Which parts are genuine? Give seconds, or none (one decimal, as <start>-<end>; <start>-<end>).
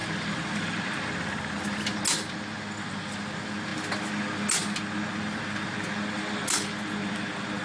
0.0-7.6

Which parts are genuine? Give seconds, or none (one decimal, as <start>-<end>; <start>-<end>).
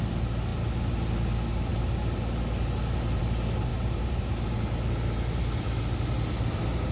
0.0-3.7; 4.4-6.9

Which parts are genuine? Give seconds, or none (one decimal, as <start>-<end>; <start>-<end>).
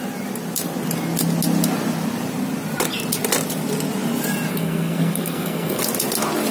0.0-4.5; 5.8-6.5